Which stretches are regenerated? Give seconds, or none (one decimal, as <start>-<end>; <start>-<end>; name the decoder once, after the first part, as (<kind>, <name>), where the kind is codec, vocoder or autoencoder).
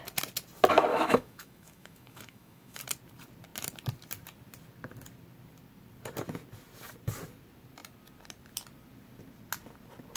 0.9-2.8 (autoencoder, DAC-VAE)